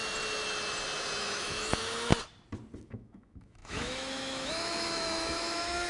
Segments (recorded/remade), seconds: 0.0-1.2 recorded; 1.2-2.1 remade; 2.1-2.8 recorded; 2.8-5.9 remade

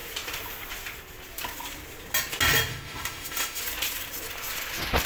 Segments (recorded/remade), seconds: 0.0-2.7 recorded; 2.7-3.6 remade; 3.6-5.1 recorded

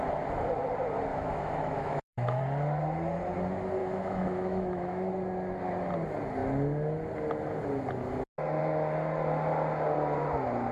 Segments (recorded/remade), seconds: 0.0-1.1 recorded; 1.1-2.4 remade; 2.4-3.8 recorded; 3.8-5.1 remade; 5.1-10.7 recorded

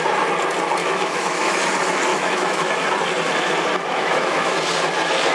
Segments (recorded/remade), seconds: 0.0-0.8 recorded; 0.8-1.6 remade; 1.6-2.1 recorded; 2.1-2.7 remade; 2.7-3.9 recorded; 3.9-4.5 remade; 4.5-5.3 recorded

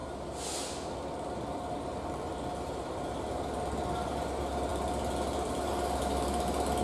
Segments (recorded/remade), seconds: 0.0-6.8 recorded

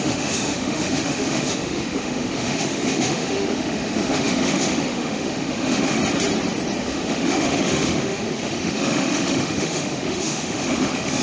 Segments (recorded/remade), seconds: 0.0-6.0 remade; 6.0-6.8 recorded; 6.8-11.2 remade

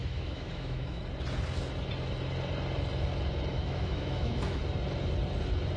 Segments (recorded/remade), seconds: 0.0-1.0 remade; 1.0-3.5 recorded; 3.5-4.6 remade; 4.6-5.8 recorded